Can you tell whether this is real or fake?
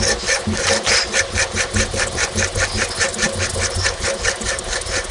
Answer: real